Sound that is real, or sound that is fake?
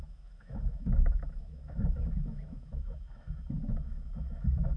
fake